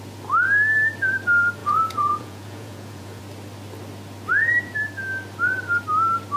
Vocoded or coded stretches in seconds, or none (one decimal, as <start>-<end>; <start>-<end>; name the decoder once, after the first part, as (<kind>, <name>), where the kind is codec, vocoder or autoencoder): 1.6-3.2 (vocoder, Vocos)